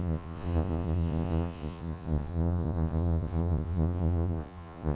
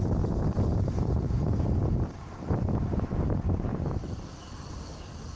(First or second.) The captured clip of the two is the second